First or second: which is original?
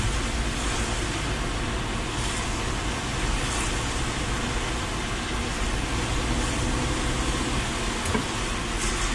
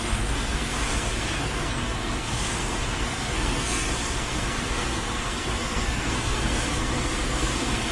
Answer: first